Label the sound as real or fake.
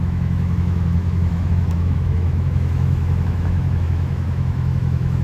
fake